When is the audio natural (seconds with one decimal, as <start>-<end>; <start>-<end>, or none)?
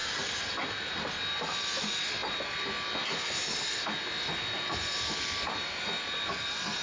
0.0-6.8